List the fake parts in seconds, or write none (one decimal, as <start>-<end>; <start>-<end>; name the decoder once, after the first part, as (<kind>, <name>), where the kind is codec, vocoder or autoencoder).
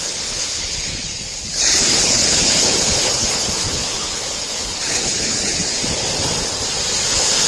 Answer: 0.0-5.8 (codec, HILCodec); 7.1-7.5